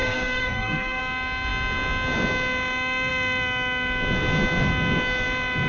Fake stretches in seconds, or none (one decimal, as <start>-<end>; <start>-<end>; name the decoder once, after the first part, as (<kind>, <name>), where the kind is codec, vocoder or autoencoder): 0.0-1.0 (codec, SNAC)